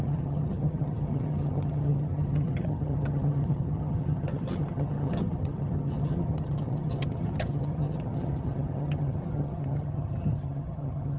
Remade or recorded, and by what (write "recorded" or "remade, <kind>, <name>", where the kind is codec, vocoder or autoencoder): remade, vocoder, HiFi-GAN